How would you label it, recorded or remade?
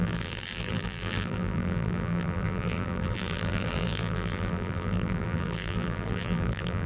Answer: remade